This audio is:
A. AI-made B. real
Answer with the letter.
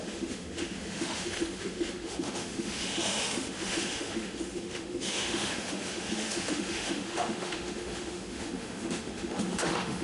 A